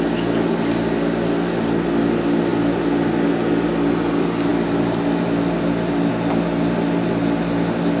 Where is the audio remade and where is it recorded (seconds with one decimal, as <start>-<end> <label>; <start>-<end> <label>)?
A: 0.0-8.0 recorded